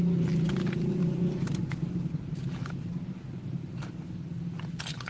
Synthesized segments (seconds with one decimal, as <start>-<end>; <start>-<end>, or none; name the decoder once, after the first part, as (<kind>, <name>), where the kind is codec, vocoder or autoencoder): none